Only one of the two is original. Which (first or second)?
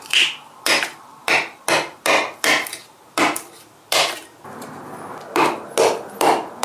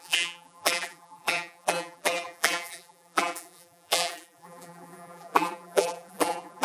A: first